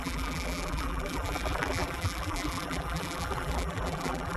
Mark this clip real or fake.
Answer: fake